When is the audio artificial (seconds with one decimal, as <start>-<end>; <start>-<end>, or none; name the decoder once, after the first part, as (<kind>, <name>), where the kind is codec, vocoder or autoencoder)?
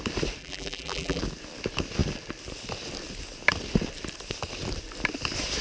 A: 0.4-1.2 (vocoder, BigVGAN v2)